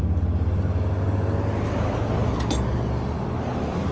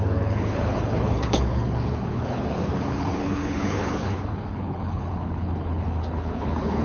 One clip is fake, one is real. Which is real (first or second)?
first